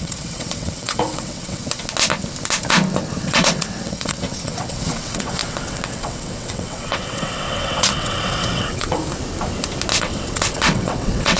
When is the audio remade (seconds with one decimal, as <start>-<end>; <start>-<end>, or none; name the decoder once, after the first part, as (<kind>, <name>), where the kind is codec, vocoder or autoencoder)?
0.0-1.6 (vocoder, WaveNeXt); 3.2-9.0; 10.0-11.4